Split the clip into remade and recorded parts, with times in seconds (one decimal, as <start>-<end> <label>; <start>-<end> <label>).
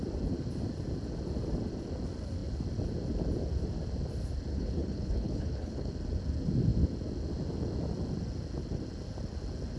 0.0-4.5 recorded; 4.5-5.9 remade; 5.9-9.8 recorded